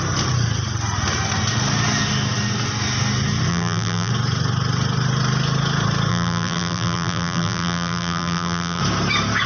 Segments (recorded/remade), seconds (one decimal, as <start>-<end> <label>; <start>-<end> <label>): 0.0-3.5 recorded; 3.5-4.1 remade; 4.1-6.1 recorded; 6.1-8.8 remade; 8.8-9.5 recorded